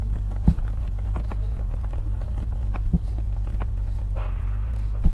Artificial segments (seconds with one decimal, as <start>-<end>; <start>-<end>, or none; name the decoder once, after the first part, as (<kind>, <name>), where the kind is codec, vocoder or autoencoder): 0.0-3.1 (codec, DAC)